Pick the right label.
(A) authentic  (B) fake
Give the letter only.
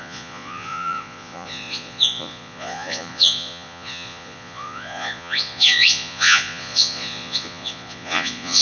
B